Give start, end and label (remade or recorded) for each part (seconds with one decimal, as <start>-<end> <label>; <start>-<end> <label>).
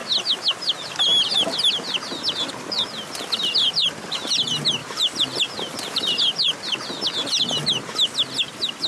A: 0.0-4.8 recorded; 4.8-6.2 remade; 6.2-8.9 recorded